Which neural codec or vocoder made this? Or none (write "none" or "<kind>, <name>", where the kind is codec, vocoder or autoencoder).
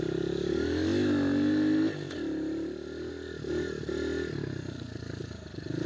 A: none